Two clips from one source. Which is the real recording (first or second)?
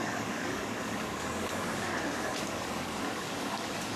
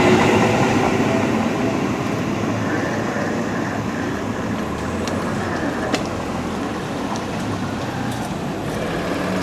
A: second